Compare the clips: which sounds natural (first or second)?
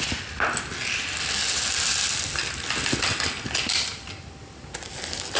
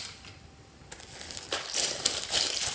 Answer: first